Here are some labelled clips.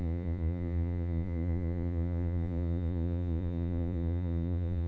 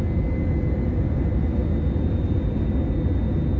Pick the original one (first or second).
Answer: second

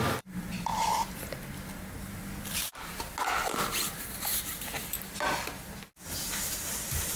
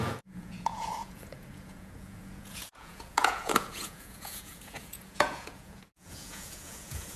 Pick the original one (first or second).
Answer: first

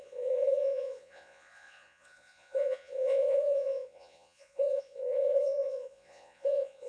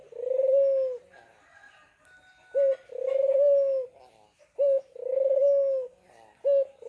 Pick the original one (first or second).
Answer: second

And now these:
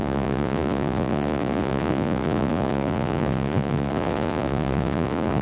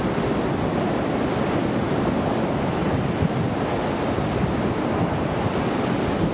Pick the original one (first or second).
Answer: second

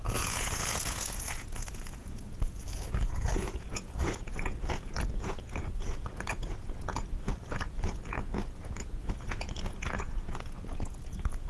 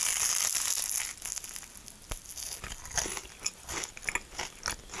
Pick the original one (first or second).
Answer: second